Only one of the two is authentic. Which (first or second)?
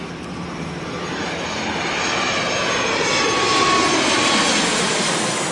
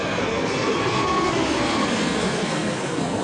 first